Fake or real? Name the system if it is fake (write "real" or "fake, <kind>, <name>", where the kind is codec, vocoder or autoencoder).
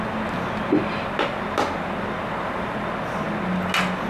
real